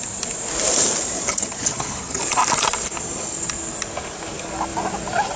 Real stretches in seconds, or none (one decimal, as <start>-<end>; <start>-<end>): 0.0-1.3; 2.2-5.4